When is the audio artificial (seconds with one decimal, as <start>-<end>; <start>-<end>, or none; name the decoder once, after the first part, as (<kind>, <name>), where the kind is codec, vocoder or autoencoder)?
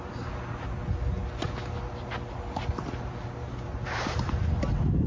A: none